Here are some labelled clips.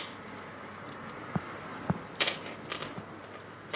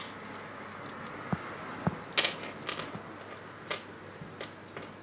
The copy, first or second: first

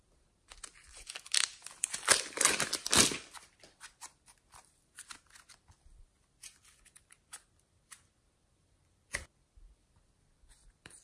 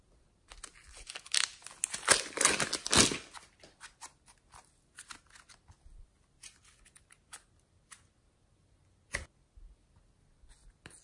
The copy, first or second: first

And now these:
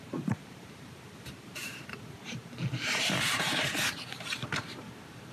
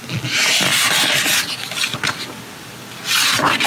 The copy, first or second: first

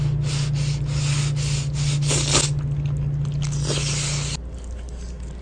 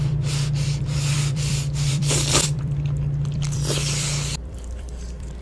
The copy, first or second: second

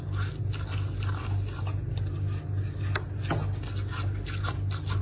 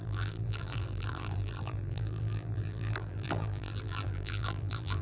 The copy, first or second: second